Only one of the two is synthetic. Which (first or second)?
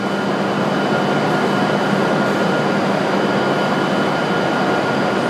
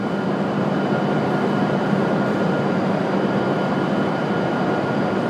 second